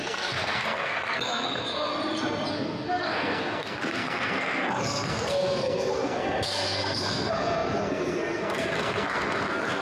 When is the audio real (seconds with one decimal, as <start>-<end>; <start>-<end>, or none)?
1.9-2.5